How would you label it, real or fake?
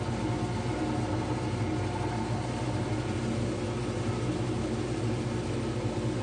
real